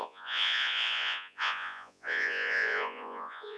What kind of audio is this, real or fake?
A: fake